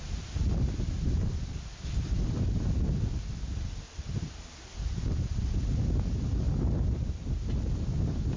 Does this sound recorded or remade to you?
recorded